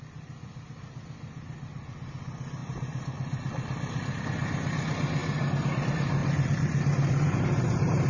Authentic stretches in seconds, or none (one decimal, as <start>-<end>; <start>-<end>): 0.0-2.6; 4.2-6.2